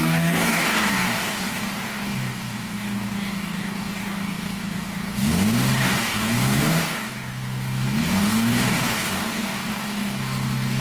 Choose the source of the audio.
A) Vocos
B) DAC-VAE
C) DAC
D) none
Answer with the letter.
C